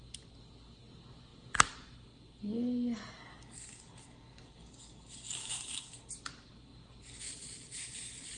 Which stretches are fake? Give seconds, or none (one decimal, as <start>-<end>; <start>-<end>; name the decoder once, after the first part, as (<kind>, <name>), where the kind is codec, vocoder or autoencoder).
3.2-6.1 (codec, DAC)